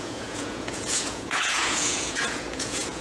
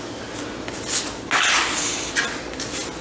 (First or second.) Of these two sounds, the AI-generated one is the first